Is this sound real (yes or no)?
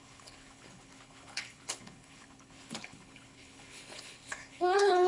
no